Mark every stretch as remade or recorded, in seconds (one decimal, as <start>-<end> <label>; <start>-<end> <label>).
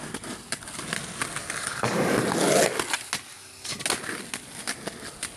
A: 0.0-1.4 recorded; 1.4-2.1 remade; 2.1-3.3 recorded; 3.3-3.8 remade; 3.8-5.4 recorded